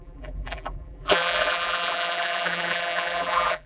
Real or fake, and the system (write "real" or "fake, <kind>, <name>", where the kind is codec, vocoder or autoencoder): fake, vocoder, BigVGAN v2